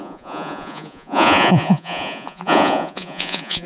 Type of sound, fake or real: fake